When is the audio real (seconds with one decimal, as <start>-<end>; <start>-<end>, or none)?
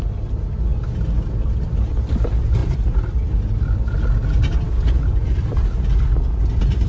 0.0-6.9